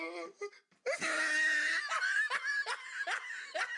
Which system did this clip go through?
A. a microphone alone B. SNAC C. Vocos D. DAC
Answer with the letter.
A